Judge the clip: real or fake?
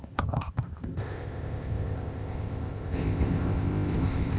fake